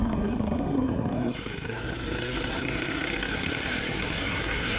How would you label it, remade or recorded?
remade